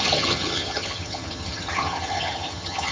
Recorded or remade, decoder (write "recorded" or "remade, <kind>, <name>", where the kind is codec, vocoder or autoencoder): remade, vocoder, HiFi-GAN